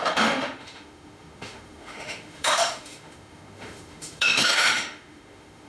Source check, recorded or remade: remade